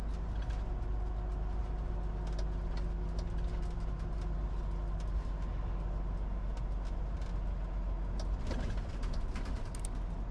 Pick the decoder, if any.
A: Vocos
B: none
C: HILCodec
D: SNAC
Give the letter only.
B